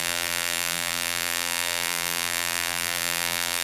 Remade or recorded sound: remade